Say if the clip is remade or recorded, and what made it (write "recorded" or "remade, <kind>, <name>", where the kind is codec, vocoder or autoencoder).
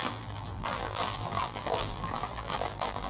remade, vocoder, BigVGAN v2